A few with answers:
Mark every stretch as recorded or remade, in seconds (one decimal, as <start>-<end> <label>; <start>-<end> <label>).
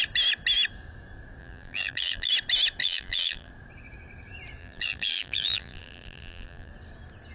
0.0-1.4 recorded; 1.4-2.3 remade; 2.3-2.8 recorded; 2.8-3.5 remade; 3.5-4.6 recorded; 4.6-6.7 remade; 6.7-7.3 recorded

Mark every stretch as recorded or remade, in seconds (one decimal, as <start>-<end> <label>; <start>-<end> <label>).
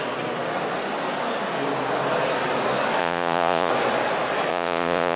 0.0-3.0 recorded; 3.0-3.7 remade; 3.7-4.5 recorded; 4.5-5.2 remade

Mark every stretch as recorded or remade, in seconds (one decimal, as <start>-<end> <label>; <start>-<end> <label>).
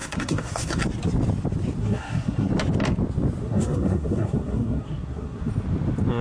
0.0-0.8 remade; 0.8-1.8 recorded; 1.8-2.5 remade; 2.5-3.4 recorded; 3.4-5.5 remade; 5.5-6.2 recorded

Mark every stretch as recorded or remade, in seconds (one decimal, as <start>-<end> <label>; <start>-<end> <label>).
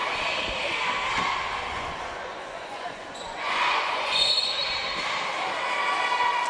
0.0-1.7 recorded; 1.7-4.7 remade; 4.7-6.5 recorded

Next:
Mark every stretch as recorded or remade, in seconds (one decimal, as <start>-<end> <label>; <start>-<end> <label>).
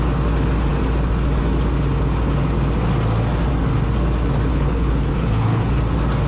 0.0-4.5 recorded; 4.5-5.7 remade; 5.7-6.3 recorded